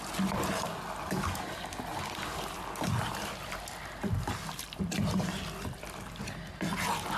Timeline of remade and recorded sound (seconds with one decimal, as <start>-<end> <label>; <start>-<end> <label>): 0.0-1.9 recorded; 1.9-6.2 remade; 6.2-7.2 recorded